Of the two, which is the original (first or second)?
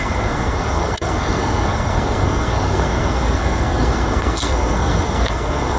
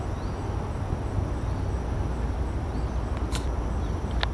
second